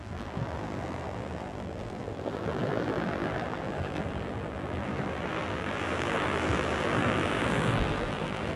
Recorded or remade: remade